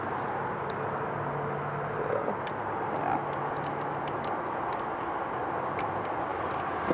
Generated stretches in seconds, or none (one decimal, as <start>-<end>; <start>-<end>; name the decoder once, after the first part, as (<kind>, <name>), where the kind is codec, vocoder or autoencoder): none